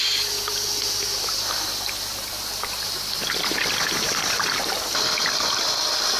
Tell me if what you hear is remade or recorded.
recorded